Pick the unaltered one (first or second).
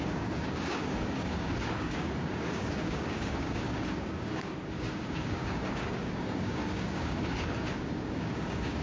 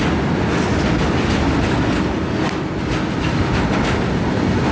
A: second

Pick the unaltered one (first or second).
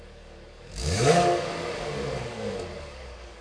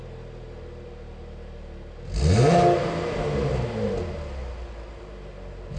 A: second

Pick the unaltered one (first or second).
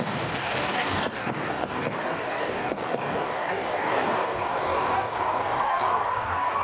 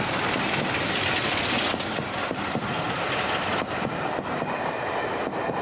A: second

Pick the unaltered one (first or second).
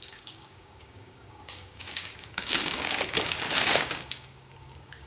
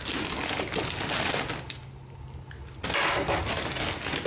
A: second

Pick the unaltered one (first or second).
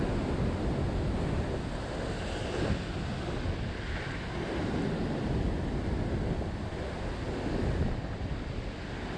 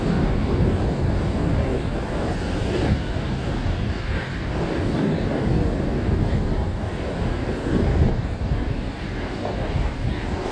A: first